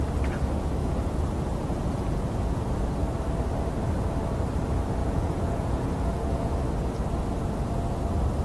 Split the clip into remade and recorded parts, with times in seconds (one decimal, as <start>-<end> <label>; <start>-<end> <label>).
0.0-0.8 recorded; 0.8-2.6 remade; 2.6-5.0 recorded; 5.0-6.5 remade; 6.5-8.4 recorded